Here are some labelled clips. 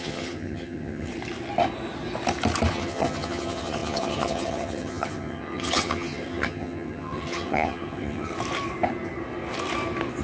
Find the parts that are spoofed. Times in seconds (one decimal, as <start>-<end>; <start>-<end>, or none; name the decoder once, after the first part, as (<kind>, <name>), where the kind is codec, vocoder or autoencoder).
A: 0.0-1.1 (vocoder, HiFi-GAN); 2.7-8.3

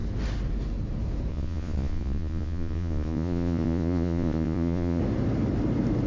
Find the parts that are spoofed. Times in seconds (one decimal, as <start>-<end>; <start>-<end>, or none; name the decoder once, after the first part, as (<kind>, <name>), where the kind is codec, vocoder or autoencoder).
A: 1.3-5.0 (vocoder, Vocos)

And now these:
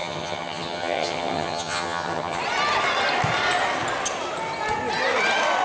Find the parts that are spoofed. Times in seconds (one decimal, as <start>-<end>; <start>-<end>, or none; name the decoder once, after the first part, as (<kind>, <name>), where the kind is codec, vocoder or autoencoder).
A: 0.0-2.4 (vocoder, HiFi-GAN)